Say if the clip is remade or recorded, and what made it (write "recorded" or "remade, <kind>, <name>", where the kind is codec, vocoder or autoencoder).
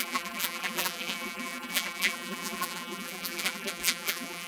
remade, vocoder, BigVGAN v2